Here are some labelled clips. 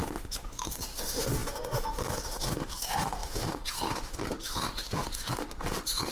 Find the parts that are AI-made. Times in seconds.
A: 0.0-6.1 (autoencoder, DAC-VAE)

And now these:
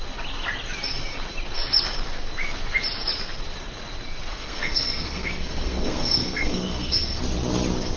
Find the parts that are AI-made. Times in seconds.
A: 4.3-7.2 (codec, SNAC)